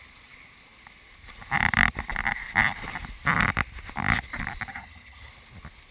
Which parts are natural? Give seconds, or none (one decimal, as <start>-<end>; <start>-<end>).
0.0-4.7; 5.3-5.9